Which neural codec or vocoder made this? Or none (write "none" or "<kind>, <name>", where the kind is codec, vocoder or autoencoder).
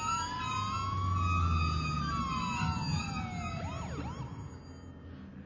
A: none